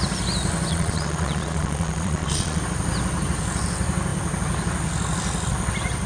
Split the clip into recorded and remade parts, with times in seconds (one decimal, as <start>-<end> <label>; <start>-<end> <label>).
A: 0.0-0.7 recorded; 0.7-2.6 remade; 2.6-6.1 recorded